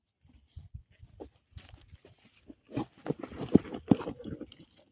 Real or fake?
real